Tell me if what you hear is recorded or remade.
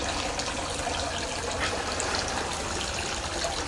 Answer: recorded